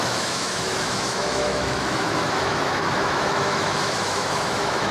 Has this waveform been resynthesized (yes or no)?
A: yes